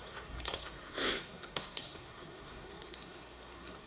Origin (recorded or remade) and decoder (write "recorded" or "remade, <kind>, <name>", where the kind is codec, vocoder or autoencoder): remade, codec, SNAC